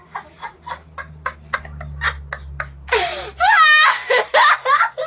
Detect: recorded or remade recorded